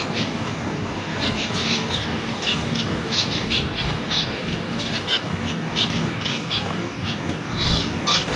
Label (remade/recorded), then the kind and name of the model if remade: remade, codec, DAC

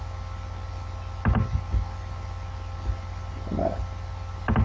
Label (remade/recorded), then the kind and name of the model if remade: recorded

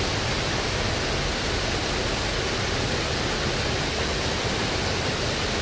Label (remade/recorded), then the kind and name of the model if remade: recorded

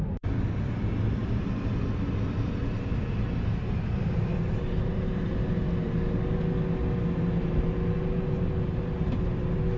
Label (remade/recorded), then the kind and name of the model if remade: recorded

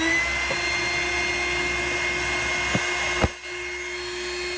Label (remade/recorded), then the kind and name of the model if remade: recorded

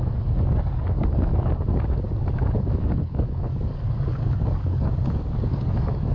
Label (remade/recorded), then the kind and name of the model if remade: remade, codec, DAC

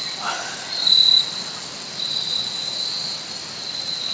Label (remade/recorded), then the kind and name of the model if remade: recorded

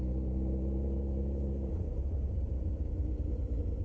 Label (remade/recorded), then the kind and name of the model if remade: recorded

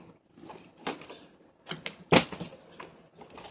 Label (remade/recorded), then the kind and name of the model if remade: recorded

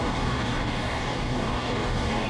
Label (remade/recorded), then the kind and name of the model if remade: remade, codec, DAC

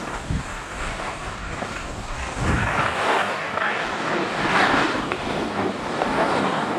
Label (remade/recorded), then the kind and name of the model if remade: remade, codec, DAC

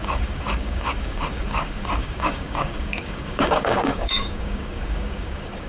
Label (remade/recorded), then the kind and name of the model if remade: remade, codec, DAC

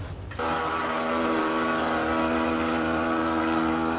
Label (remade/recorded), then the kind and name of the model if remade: recorded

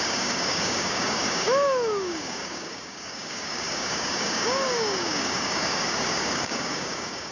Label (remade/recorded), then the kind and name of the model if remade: remade, codec, DAC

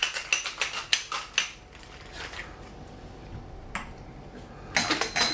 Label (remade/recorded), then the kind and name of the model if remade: recorded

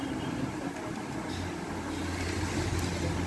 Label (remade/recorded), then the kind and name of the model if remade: recorded